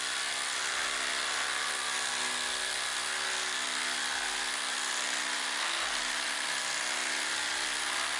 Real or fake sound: real